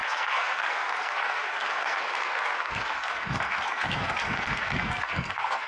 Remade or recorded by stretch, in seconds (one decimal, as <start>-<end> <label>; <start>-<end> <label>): 0.0-5.7 remade